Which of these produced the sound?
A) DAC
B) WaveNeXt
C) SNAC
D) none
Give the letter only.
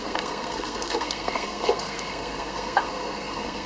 C